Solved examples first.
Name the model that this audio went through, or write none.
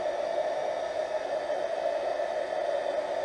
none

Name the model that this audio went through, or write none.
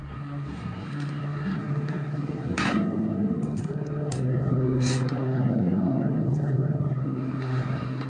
codec, SNAC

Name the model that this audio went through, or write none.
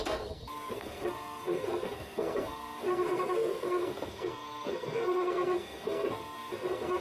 codec, SNAC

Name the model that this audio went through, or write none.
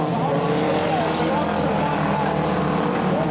none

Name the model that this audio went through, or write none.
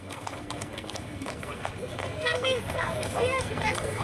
codec, SNAC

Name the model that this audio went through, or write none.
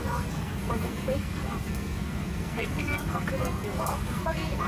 codec, SNAC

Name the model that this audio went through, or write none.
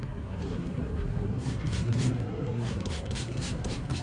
codec, SNAC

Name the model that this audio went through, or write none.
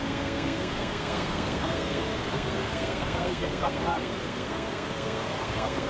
codec, SNAC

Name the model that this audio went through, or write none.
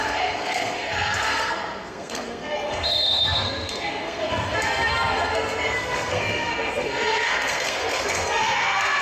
codec, SNAC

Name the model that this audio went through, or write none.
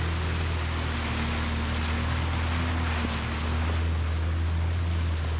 none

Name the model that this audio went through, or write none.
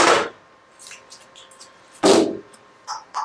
none